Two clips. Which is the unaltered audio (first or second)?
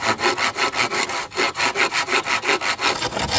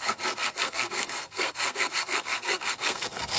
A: first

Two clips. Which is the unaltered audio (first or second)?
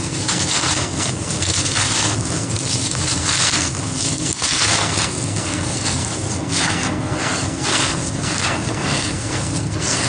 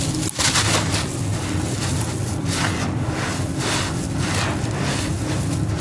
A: second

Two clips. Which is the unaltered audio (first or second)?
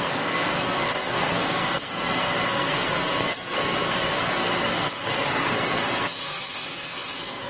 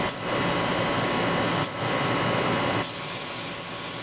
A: second